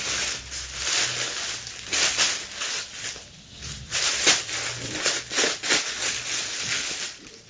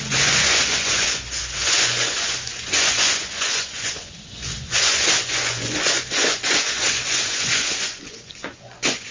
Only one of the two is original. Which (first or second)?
first